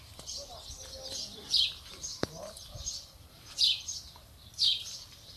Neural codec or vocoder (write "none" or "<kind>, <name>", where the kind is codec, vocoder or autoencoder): vocoder, BigVGAN v2